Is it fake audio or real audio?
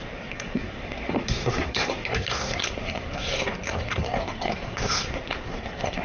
fake